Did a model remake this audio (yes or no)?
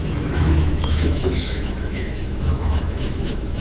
yes